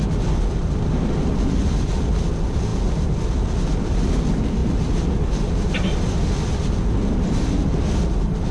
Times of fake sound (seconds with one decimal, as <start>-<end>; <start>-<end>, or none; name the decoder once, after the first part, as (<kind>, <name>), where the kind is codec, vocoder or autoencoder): none